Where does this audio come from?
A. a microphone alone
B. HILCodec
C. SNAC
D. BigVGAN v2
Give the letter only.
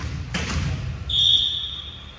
A